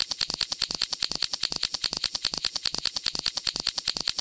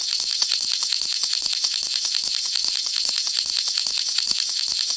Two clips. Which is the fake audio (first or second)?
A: second